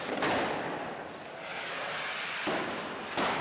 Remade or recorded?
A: recorded